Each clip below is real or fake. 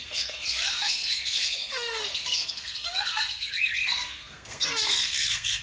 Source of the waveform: fake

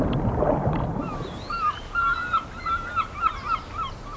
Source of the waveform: real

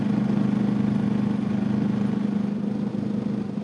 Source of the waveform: real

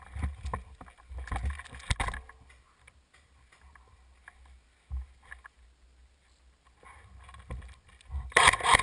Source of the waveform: real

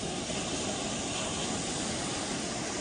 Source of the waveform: real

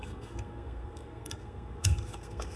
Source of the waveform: fake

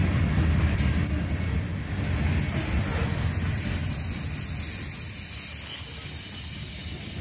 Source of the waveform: real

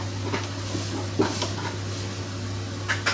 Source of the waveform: real